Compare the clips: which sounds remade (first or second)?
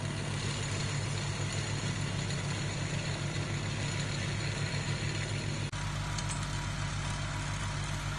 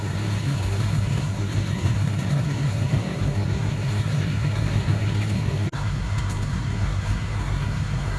second